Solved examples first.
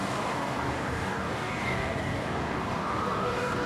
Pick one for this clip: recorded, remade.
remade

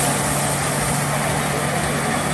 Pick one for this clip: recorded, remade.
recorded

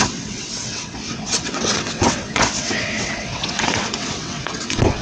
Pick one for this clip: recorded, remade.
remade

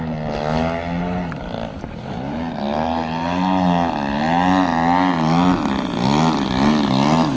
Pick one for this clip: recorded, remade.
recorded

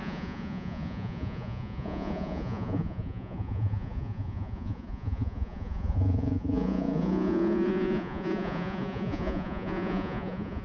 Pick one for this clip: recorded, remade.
remade